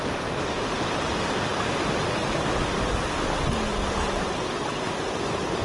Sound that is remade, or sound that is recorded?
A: recorded